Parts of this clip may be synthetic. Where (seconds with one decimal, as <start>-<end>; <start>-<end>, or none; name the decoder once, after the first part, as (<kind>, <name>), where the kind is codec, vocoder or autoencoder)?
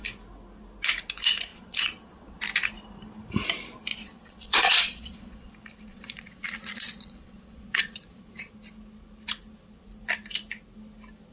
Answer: 1.5-2.4 (vocoder, Vocos); 3.9-5.5; 5.9-8.5